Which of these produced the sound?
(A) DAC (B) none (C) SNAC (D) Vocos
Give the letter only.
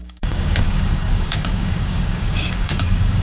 A